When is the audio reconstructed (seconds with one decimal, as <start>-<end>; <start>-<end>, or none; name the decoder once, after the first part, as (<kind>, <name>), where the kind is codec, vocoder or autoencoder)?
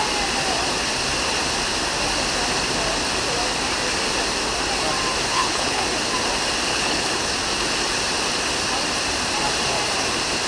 5.3-5.8 (codec, HILCodec); 6.7-7.3